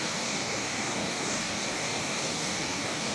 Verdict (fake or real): fake